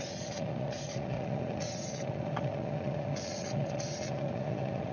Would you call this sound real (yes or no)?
no